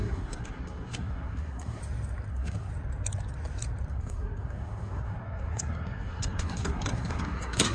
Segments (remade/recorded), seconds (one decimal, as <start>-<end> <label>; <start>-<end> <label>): 0.0-1.8 remade; 1.8-2.3 recorded; 2.3-2.7 remade; 2.7-3.9 recorded; 3.9-7.7 remade